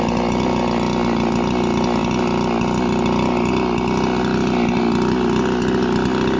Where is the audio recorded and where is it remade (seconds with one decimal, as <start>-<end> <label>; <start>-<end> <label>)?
0.0-6.4 recorded